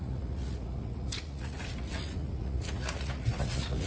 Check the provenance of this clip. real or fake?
fake